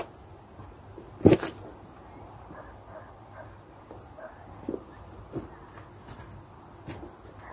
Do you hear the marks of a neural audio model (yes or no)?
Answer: no